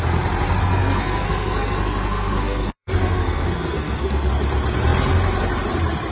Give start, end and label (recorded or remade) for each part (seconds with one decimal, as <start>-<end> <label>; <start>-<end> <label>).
0.0-0.6 recorded; 0.6-4.3 remade; 4.3-6.1 recorded